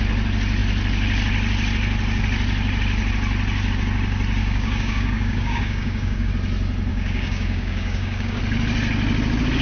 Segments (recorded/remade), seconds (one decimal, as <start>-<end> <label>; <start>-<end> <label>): 0.0-4.4 recorded; 4.4-6.3 remade; 6.3-6.9 recorded; 6.9-8.4 remade; 8.4-9.6 recorded